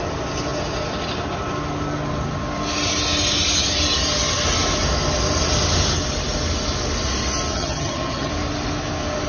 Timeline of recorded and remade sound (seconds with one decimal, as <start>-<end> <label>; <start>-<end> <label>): 0.0-7.5 recorded; 7.5-8.3 remade; 8.3-9.3 recorded